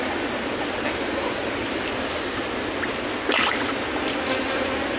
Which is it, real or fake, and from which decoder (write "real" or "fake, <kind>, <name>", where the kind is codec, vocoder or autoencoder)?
real